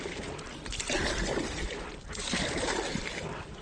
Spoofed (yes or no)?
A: no